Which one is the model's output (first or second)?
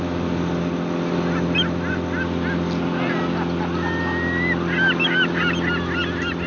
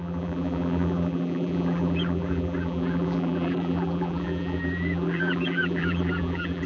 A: second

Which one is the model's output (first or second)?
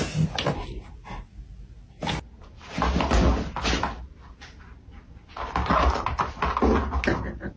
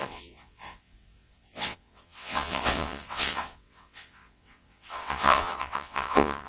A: second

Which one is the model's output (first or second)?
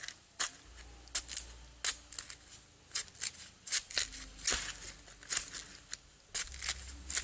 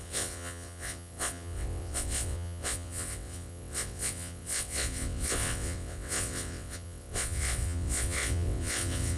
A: second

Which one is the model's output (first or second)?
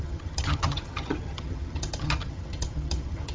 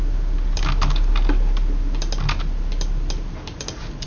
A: first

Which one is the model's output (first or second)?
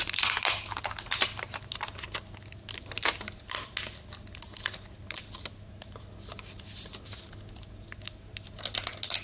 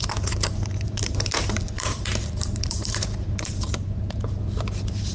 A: second